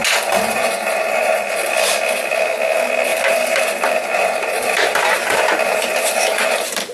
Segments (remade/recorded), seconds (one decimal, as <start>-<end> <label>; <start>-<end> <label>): 0.0-1.4 remade; 1.4-3.1 recorded; 3.1-6.9 remade